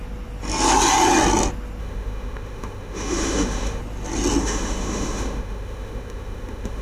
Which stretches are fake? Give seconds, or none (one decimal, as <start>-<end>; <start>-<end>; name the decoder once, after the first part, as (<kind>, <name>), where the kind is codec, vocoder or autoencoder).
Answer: 1.8-3.8 (autoencoder, DAC-VAE); 4.4-6.8